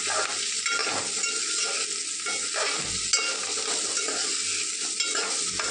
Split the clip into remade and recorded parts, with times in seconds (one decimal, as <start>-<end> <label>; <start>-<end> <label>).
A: 0.0-5.7 recorded